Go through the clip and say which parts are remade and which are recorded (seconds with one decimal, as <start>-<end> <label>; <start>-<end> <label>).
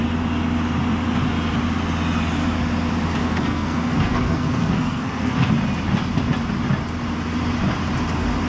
0.0-3.2 recorded; 3.2-5.5 remade; 5.5-8.5 recorded